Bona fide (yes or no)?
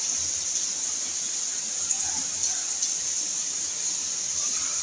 yes